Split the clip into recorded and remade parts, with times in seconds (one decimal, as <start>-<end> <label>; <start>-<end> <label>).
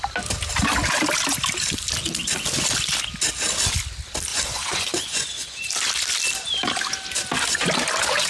0.0-4.3 recorded; 4.3-5.7 remade; 5.7-8.3 recorded